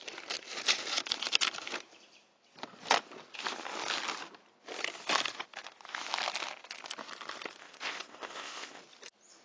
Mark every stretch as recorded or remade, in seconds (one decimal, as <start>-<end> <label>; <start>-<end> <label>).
0.0-7.6 recorded; 7.6-8.8 remade; 8.8-9.4 recorded